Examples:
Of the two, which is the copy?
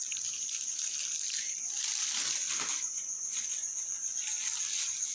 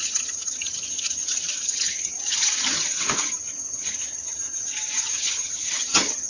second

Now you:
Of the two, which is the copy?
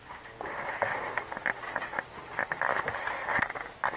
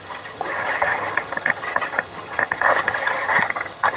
second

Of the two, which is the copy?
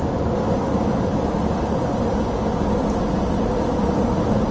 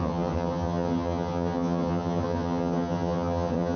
second